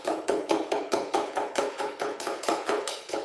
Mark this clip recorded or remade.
remade